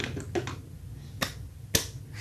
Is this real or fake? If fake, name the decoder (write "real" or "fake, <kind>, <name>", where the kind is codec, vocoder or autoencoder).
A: real